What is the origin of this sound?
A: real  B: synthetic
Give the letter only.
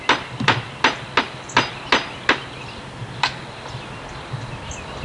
A